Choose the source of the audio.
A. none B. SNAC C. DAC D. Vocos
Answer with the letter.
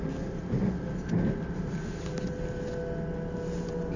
A